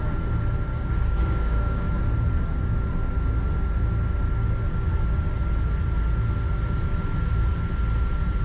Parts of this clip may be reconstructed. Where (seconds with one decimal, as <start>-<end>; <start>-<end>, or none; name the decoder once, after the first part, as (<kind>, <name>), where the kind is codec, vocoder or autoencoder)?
0.7-2.0 (codec, DAC)